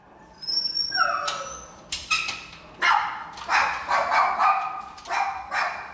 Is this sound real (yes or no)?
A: yes